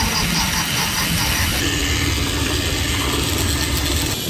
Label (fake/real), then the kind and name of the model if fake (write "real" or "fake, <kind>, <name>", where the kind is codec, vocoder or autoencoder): real